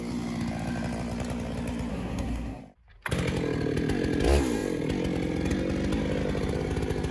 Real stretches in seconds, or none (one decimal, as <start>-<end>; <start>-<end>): 0.0-1.9; 2.6-7.1